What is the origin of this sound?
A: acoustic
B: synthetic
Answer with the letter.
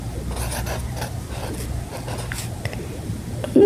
A